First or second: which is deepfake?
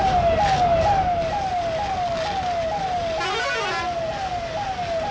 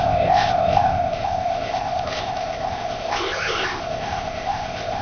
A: second